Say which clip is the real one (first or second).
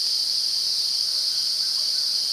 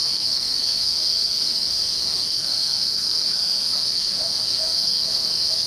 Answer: first